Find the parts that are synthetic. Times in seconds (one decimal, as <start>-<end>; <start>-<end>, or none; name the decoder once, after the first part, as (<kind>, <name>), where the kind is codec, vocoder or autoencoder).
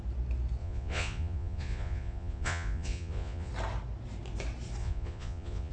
0.6-3.5 (vocoder, Vocos); 4.8-5.7